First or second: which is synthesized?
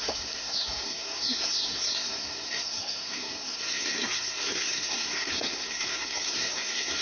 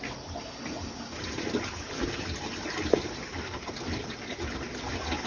first